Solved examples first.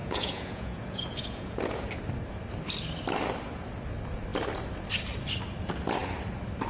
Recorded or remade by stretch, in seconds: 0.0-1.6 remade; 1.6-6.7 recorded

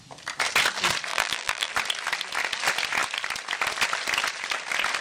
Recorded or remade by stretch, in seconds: 0.0-1.1 recorded; 1.1-1.7 remade; 1.7-5.0 recorded

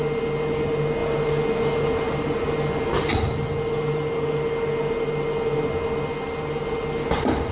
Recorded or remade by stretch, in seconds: 0.0-7.5 recorded

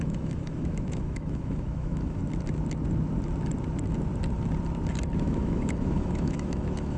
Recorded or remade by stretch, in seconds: 0.0-2.2 remade; 2.2-5.2 recorded; 5.2-7.0 remade

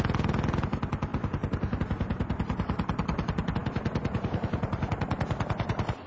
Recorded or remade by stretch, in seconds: 0.0-6.1 recorded

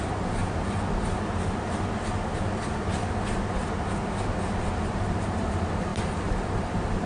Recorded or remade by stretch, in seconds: 0.0-0.4 remade; 0.4-4.7 recorded; 4.7-7.1 remade

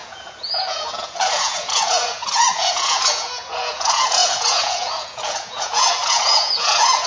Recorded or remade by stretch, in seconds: 0.0-7.1 remade

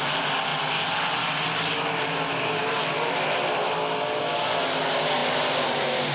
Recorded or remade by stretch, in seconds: 0.0-6.1 recorded